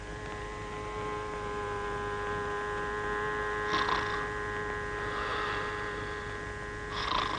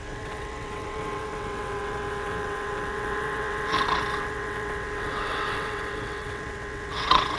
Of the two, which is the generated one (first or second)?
second